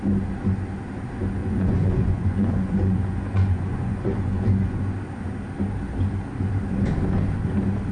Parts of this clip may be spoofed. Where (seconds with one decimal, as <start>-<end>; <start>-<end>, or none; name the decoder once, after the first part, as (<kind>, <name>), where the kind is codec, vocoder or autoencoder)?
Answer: 1.4-4.8 (vocoder, Vocos)